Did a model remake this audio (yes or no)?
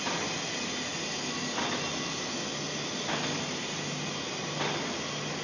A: no